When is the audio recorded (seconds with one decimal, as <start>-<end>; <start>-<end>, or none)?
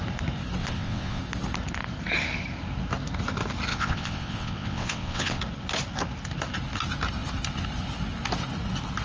0.0-0.6; 1.2-3.7; 5.4-9.0